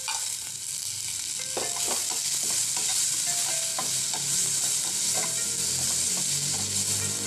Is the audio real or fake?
real